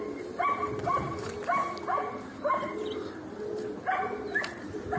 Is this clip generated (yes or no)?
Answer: no